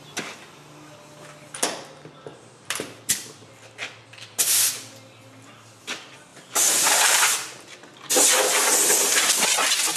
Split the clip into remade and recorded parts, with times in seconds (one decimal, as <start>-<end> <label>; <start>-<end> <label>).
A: 0.0-2.3 recorded; 2.3-3.5 remade; 3.5-6.3 recorded; 6.3-8.1 remade; 8.1-10.0 recorded